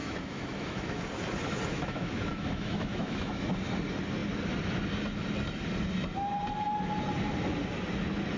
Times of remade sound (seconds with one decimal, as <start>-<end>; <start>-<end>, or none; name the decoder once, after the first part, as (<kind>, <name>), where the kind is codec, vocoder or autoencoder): 0.0-1.0 (autoencoder, DAC-VAE); 1.7-3.5